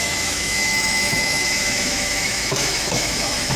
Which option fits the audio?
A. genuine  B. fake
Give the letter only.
B